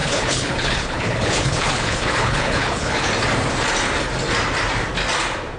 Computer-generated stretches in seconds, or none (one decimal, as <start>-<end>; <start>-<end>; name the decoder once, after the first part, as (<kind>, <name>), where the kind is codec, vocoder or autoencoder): 0.0-3.1 (codec, HILCodec)